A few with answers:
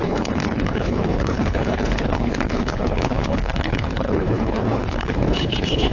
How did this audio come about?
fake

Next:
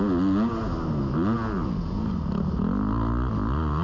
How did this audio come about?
real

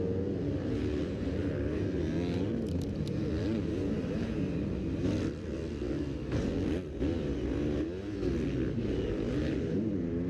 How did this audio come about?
real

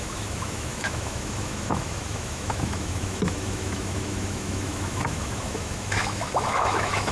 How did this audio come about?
fake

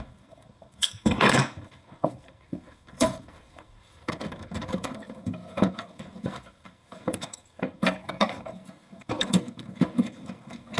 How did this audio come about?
fake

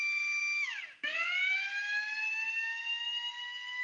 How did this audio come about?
real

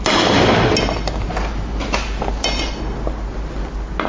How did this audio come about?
real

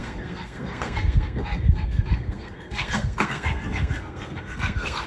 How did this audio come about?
fake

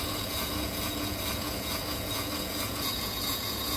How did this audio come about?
fake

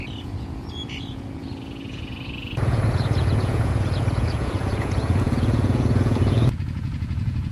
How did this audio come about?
fake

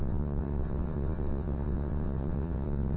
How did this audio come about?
fake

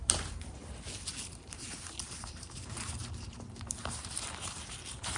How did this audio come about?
fake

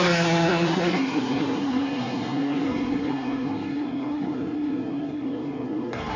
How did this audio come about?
fake